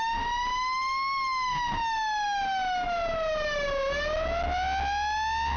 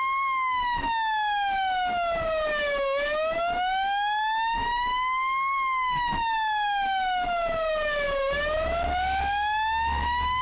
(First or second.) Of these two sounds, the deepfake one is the second